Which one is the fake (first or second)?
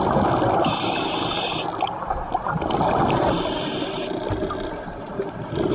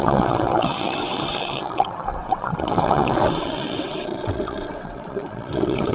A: second